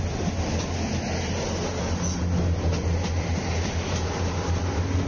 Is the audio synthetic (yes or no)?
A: no